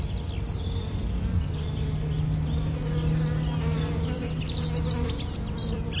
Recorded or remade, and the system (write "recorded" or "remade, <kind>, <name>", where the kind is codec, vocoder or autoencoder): recorded